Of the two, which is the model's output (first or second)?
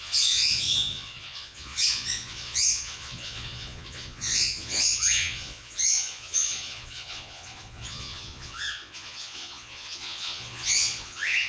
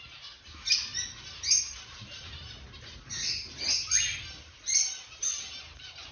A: first